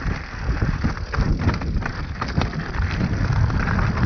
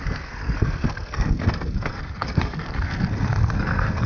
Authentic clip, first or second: first